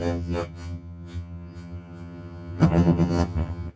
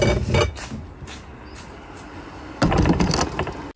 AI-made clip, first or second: first